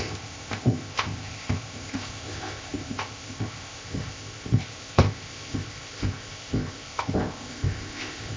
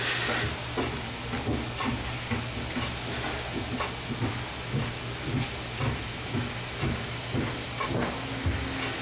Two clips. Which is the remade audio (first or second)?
first